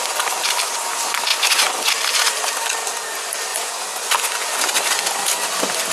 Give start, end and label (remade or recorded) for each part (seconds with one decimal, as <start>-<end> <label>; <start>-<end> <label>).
0.0-1.3 recorded; 1.3-1.9 remade; 1.9-3.5 recorded; 3.5-4.1 remade; 4.1-5.9 recorded